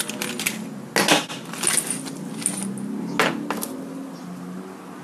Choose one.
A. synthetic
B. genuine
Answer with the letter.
B